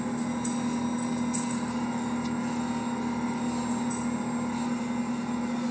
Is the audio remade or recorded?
recorded